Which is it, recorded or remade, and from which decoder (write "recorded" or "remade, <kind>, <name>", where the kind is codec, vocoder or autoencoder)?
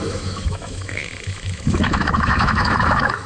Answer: remade, autoencoder, DAC-VAE